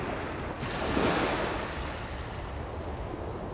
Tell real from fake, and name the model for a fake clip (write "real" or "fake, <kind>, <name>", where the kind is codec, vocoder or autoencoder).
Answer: real